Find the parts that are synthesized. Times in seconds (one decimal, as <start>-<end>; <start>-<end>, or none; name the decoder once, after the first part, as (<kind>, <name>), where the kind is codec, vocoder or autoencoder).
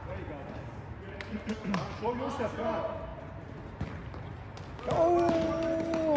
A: 3.1-4.4 (vocoder, BigVGAN v2)